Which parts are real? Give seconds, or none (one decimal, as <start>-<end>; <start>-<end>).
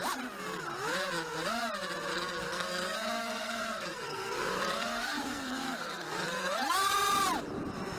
0.0-2.1; 6.9-8.0